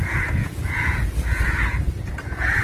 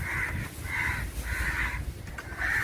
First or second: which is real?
second